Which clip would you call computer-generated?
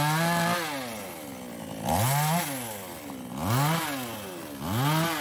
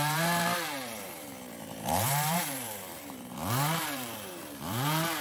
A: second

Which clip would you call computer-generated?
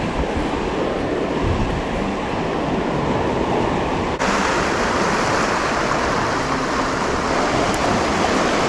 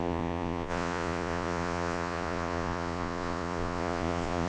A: second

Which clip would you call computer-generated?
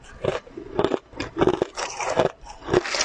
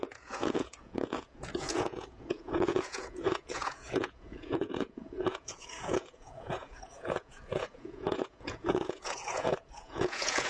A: second